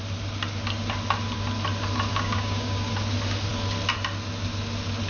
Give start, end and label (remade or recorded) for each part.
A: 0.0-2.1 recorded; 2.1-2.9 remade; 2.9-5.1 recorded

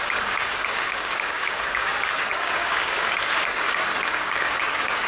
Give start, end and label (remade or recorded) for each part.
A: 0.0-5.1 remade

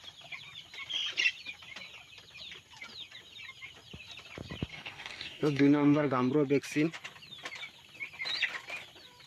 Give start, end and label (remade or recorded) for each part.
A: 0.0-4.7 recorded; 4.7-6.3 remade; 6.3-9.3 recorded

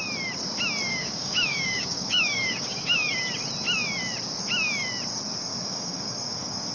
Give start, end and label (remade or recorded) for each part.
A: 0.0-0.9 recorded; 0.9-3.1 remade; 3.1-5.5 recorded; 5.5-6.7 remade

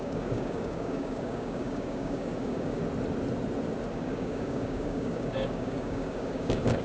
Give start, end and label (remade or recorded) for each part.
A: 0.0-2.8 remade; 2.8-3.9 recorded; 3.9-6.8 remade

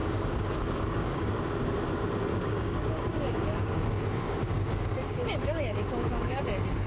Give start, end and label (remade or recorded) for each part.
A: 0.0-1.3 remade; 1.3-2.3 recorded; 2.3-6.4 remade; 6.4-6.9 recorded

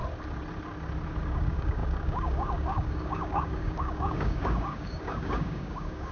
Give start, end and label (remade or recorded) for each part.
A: 0.0-1.2 recorded; 1.2-6.1 remade

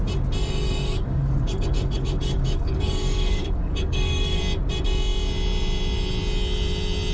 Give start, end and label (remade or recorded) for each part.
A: 0.0-0.4 recorded; 0.4-4.4 remade; 4.4-7.1 recorded